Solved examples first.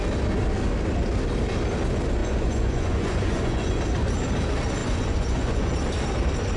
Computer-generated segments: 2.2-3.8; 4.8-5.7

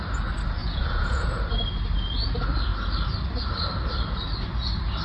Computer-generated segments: 0.6-1.4

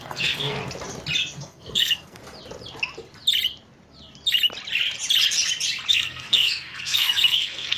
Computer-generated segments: 0.0-0.6; 1.4-2.2; 5.9-7.8